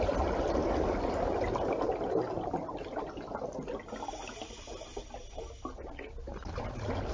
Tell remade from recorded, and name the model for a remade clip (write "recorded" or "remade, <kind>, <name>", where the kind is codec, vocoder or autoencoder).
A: recorded